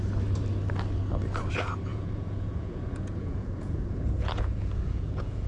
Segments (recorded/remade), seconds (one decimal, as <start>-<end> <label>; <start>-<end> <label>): 0.0-1.9 recorded; 1.9-5.5 remade